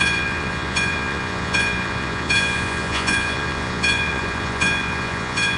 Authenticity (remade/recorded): remade